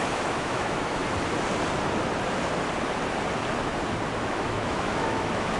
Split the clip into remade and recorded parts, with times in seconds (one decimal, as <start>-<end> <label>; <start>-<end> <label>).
0.0-1.0 remade; 1.0-4.2 recorded; 4.2-5.6 remade